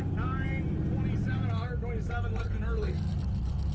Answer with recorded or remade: recorded